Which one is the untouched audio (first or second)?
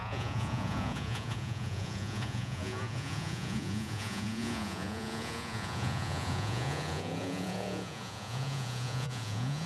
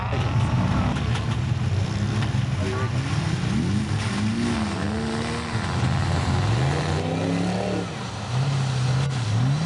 second